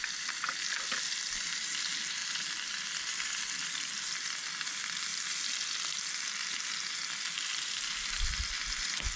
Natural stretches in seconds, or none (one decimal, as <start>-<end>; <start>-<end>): 0.0-2.2; 3.4-9.2